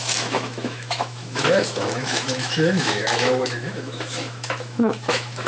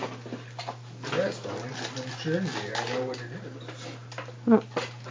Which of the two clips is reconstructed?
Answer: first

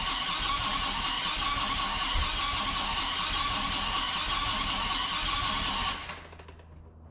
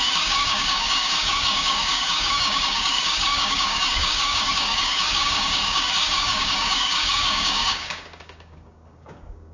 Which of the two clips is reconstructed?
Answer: second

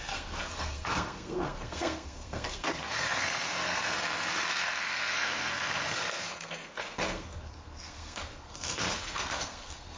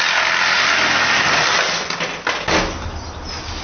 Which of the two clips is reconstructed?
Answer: first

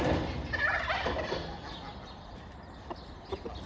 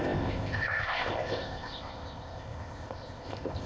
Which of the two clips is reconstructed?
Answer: second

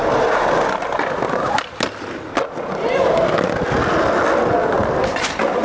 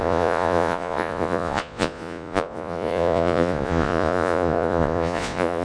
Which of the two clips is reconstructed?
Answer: second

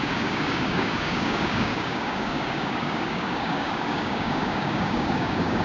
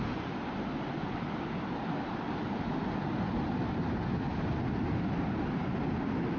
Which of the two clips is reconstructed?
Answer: first